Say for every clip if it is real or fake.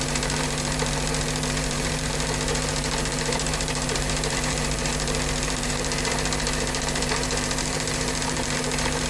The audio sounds fake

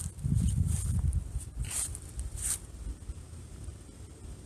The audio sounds fake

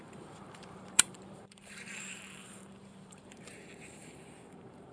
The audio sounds fake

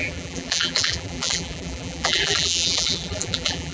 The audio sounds fake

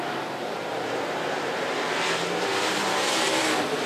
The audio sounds fake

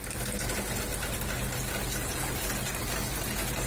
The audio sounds real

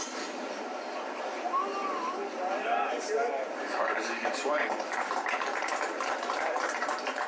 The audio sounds fake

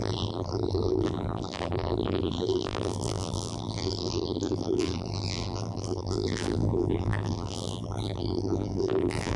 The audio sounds fake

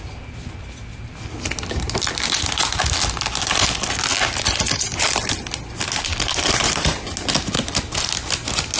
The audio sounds real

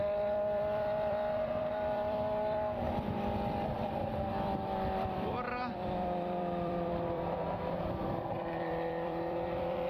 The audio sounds fake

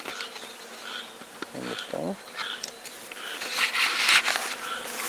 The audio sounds real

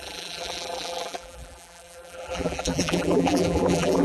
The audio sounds fake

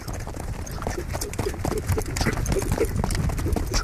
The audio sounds fake